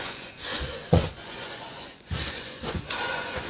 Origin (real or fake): fake